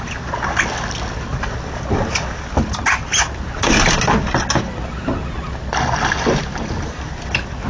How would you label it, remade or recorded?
recorded